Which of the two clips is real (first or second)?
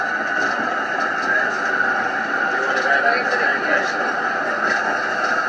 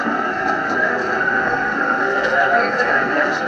first